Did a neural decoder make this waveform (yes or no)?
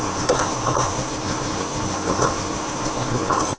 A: yes